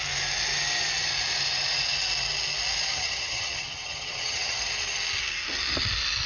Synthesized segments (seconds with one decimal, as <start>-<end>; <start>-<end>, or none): 2.9-4.6